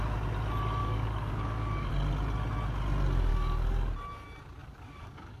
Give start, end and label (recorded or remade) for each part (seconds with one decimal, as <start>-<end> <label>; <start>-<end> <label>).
0.0-0.8 recorded; 0.8-1.9 remade; 1.9-3.3 recorded; 3.3-3.9 remade; 3.9-4.6 recorded; 4.6-5.4 remade